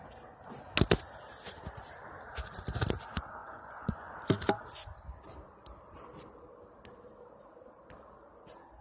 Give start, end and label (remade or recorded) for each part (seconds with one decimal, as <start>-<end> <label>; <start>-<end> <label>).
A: 0.0-3.4 recorded; 3.4-4.1 remade; 4.1-8.8 recorded